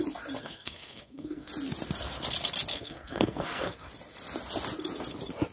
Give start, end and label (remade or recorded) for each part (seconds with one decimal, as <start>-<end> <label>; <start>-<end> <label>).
0.0-0.4 recorded; 0.4-1.5 remade; 1.5-2.7 recorded; 2.7-3.9 remade; 3.9-5.5 recorded